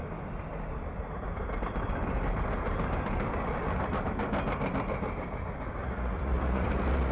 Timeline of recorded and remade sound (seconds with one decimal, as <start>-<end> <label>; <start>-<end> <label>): 0.0-5.8 recorded; 5.8-7.1 remade